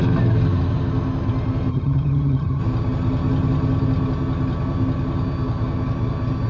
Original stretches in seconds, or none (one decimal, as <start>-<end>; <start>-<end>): 0.0-1.7; 2.6-6.5